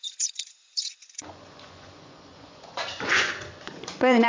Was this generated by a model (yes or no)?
yes